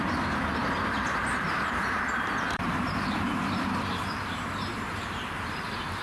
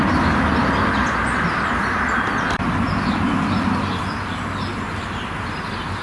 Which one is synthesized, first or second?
first